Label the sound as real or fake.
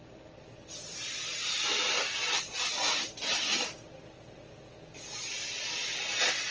real